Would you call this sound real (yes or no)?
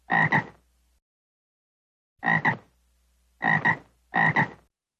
yes